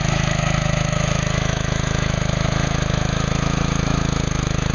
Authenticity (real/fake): fake